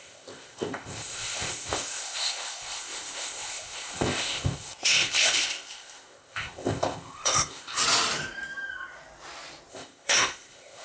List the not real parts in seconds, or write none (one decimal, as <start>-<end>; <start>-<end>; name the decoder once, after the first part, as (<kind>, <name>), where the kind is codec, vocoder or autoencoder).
0.0-7.8 (codec, ZipCodec); 9.7-10.8